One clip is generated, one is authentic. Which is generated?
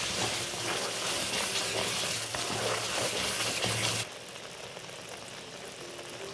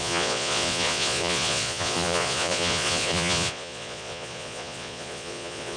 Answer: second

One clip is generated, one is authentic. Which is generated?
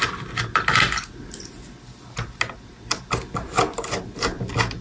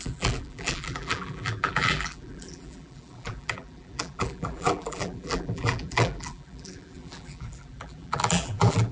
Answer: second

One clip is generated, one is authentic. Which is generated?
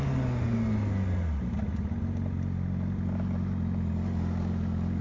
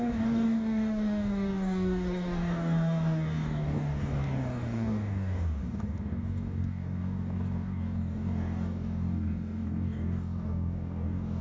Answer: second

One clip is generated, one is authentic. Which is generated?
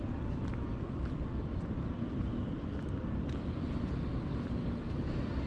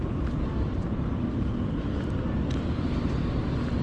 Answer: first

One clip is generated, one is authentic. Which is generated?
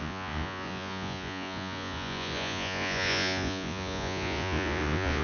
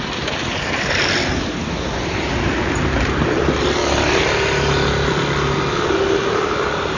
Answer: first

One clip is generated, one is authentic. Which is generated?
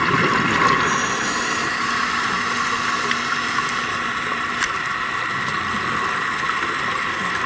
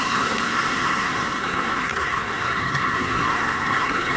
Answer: second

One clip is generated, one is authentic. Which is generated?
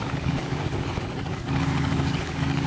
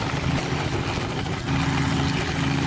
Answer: first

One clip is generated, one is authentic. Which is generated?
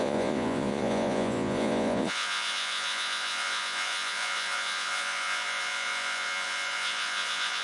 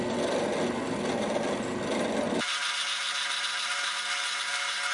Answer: first